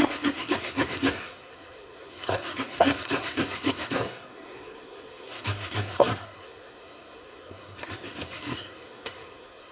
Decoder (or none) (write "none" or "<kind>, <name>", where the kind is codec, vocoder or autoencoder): codec, SNAC